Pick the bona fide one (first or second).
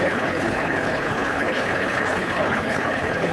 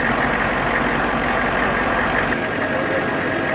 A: second